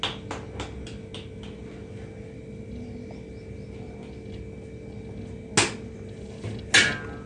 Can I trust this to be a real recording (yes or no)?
yes